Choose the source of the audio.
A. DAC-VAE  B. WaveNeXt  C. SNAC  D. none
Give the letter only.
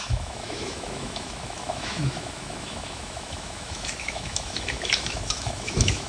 A